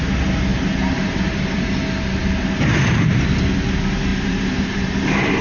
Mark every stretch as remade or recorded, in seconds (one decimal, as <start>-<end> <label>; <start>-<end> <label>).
0.0-0.5 recorded; 0.5-1.6 remade; 1.6-2.2 recorded; 2.2-3.1 remade; 3.1-4.1 recorded; 4.1-5.4 remade